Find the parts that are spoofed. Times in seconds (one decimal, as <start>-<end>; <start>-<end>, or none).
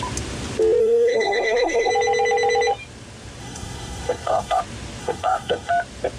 0.8-1.9; 3.4-4.6; 5.0-5.7